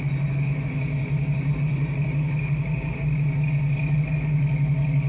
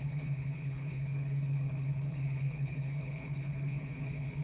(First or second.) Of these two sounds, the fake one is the second